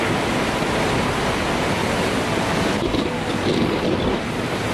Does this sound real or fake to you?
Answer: real